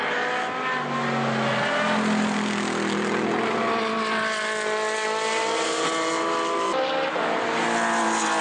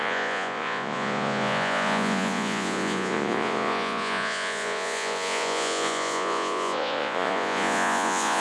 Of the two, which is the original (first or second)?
first